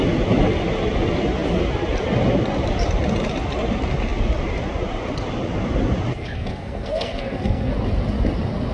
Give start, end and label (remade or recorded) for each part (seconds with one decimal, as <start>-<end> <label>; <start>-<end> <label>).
0.0-6.1 recorded; 6.1-7.7 remade; 7.7-8.7 recorded